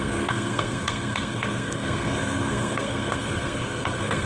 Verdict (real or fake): fake